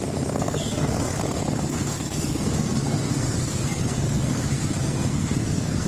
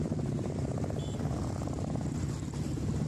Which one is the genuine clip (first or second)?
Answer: second